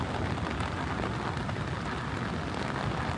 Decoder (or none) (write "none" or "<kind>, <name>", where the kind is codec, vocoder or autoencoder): none